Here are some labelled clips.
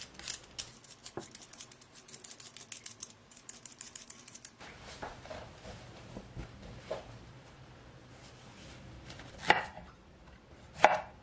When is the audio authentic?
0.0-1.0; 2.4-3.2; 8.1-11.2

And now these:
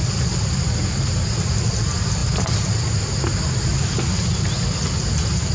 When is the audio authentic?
0.0-5.5

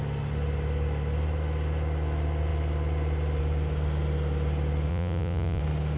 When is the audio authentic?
0.0-4.9; 5.6-6.0

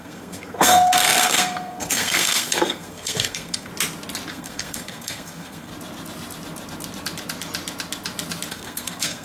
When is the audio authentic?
3.7-4.3; 5.7-8.5

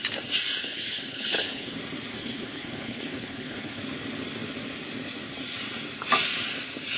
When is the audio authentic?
0.0-0.6; 1.7-2.1; 3.8-7.0

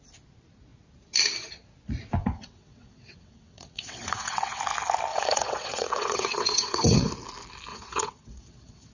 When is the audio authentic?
0.0-2.2; 4.6-5.1; 7.1-7.7

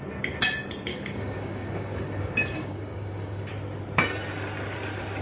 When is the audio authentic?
0.0-0.9; 3.5-5.2